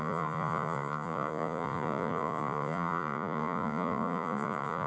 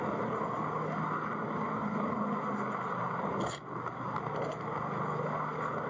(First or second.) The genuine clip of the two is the second